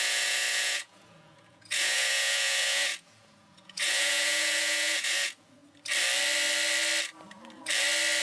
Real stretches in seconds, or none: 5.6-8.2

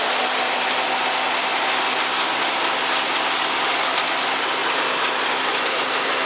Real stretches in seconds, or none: 0.0-6.3

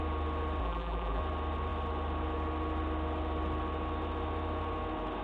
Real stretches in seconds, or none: 0.0-0.6; 1.2-5.2